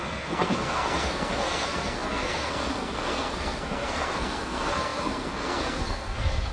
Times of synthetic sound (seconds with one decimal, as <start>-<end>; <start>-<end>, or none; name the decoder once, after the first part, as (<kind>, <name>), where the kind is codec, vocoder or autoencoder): 0.0-6.5 (codec, SNAC)